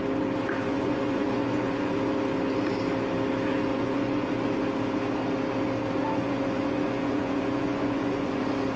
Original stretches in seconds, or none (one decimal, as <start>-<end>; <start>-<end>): 0.0-0.6; 1.9-3.7; 4.3-6.2; 8.4-8.8